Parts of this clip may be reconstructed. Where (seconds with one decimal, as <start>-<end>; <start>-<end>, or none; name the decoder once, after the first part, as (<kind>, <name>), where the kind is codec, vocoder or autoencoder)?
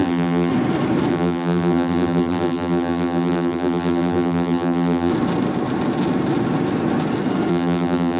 0.0-0.5 (vocoder, BigVGAN v2); 1.1-5.1; 7.5-8.2